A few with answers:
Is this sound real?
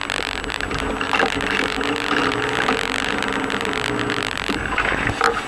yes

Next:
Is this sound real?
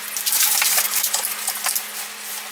yes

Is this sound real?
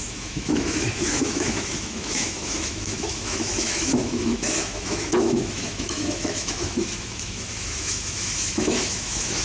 no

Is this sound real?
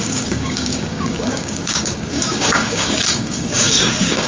no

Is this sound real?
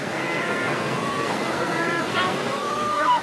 no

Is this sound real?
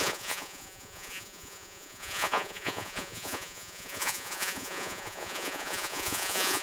no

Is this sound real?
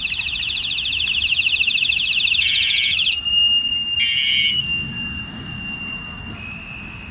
yes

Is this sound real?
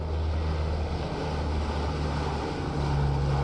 yes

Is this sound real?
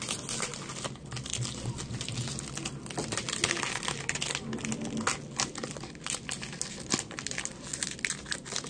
yes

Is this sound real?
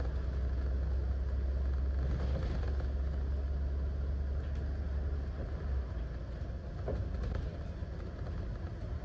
yes